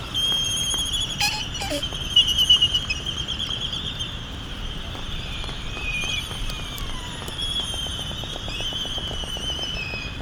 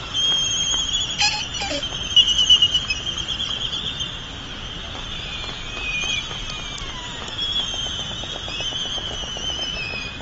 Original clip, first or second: second